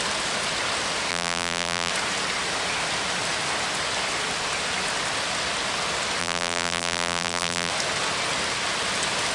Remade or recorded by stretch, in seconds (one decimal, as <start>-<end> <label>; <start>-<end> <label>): 0.0-1.1 recorded; 1.1-1.9 remade; 1.9-6.2 recorded; 6.2-7.7 remade; 7.7-9.3 recorded